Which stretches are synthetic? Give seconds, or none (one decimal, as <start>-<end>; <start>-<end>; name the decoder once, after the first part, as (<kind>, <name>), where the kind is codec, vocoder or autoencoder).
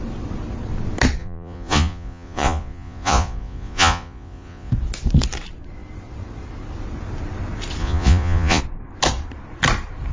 1.2-4.7 (vocoder, Vocos); 7.8-8.6